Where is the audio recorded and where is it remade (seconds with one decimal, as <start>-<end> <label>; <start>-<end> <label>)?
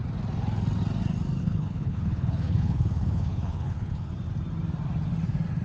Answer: 0.0-1.4 recorded; 1.4-4.1 remade; 4.1-5.6 recorded